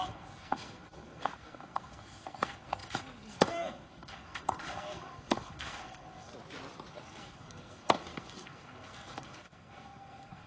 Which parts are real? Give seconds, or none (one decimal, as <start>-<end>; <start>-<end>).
6.3-6.9